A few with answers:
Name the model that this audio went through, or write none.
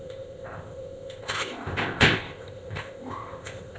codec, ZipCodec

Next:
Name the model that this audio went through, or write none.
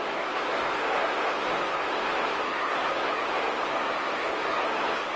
codec, SNAC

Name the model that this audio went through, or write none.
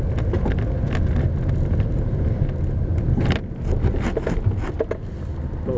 none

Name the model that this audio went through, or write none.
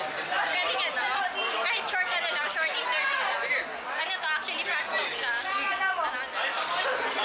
none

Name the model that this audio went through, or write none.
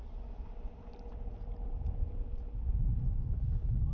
none